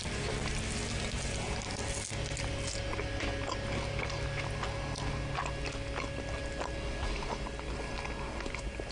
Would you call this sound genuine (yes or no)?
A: yes